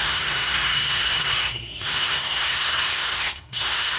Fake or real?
fake